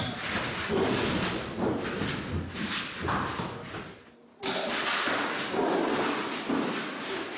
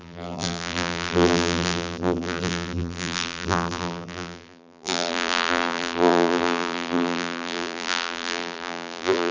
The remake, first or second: second